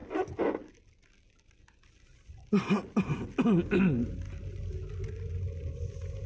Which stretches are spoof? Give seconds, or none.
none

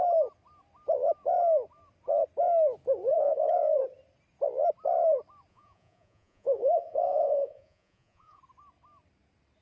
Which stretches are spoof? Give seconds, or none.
3.1-3.7 (vocoder, Vocos); 5.5-8.4

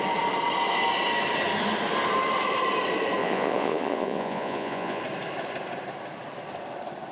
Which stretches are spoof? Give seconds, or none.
3.2-5.0 (vocoder, Vocos)